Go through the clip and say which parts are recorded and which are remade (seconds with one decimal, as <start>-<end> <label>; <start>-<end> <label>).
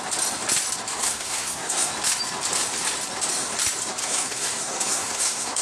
0.0-0.9 recorded; 0.9-1.9 remade; 1.9-4.0 recorded; 4.0-5.6 remade